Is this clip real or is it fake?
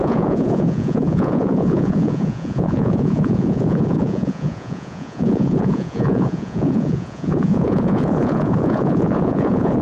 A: fake